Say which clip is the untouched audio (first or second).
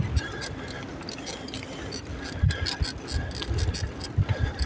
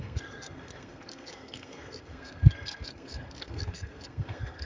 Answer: first